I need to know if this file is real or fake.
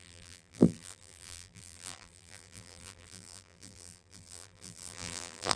fake